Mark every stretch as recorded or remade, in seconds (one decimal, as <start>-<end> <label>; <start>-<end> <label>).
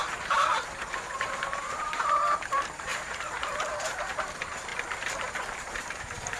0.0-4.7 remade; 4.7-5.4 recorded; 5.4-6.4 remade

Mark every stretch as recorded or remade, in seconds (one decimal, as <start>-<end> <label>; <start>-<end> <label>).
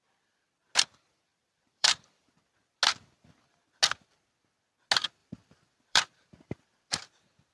0.0-1.3 recorded; 1.3-2.3 remade; 2.3-5.2 recorded; 5.2-7.1 remade; 7.1-7.5 recorded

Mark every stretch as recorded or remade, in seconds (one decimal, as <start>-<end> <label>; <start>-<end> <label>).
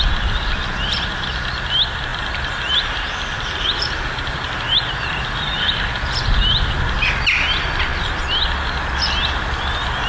0.0-2.1 recorded; 2.1-5.9 remade; 5.9-10.1 recorded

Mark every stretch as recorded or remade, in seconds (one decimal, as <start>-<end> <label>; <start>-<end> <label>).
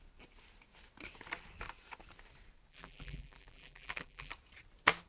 0.0-2.7 recorded; 2.7-4.3 remade; 4.3-5.1 recorded